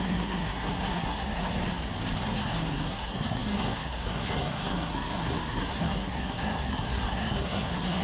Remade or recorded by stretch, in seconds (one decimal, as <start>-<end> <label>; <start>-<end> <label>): 0.0-1.6 remade; 1.6-2.2 recorded; 2.2-8.0 remade